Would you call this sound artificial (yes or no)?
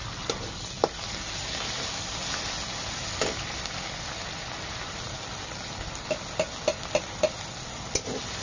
no